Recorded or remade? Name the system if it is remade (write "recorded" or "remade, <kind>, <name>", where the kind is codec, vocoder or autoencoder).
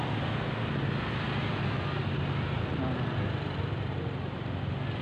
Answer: recorded